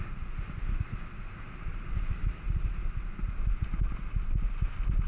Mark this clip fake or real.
real